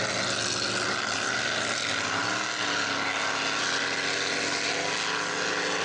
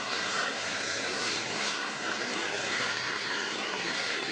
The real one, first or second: first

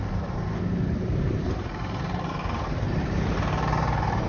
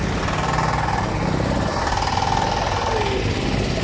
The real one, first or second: second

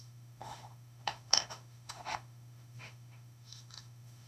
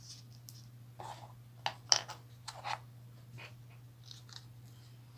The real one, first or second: second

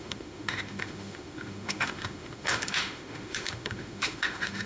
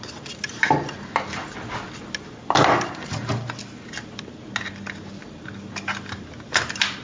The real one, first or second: second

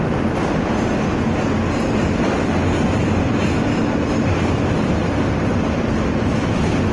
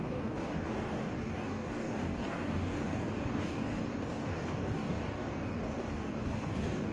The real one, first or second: first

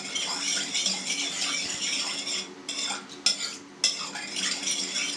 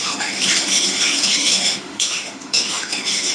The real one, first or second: first